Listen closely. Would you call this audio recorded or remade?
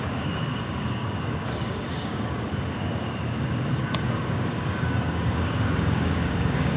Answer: remade